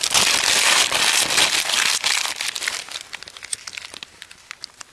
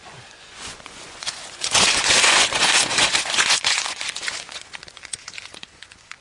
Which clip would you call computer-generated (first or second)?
second